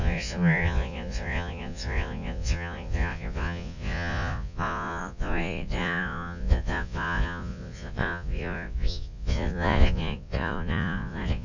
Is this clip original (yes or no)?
no